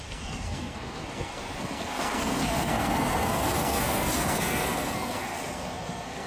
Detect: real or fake fake